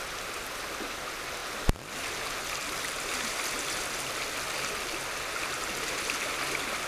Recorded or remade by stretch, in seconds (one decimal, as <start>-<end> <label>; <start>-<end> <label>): 0.0-6.9 recorded

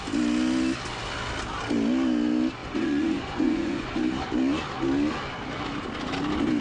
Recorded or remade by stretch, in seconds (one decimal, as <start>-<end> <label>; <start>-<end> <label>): 0.0-2.6 recorded; 2.6-4.0 remade; 4.0-6.6 recorded

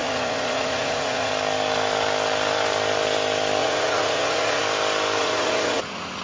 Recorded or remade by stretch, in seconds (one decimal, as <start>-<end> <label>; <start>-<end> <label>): 0.0-1.3 remade; 1.3-3.6 recorded; 3.6-4.6 remade; 4.6-5.2 recorded; 5.2-6.2 remade

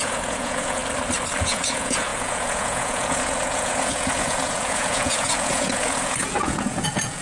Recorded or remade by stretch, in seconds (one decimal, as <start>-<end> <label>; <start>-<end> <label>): 0.0-0.8 remade; 0.8-1.4 recorded; 1.4-7.2 remade

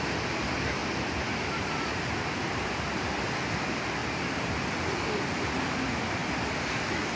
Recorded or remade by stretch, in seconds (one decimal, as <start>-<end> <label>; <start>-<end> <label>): 0.0-7.2 recorded

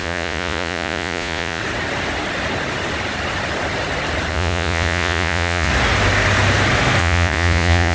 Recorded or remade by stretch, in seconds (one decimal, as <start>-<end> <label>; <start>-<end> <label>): 0.0-1.6 remade; 1.6-4.3 recorded; 4.3-5.7 remade; 5.7-7.0 recorded; 7.0-7.9 remade

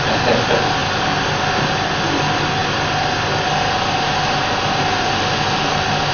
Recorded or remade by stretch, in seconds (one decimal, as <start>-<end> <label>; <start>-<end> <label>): 0.0-6.1 recorded

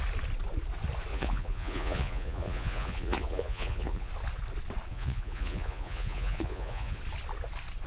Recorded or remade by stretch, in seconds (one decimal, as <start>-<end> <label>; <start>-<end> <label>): 0.0-1.1 recorded; 1.1-4.1 remade; 4.1-4.9 recorded; 4.9-7.0 remade; 7.0-7.9 recorded